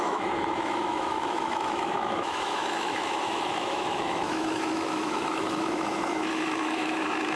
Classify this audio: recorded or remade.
remade